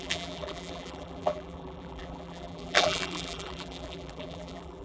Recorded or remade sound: remade